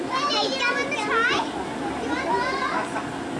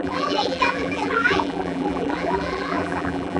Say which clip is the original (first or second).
first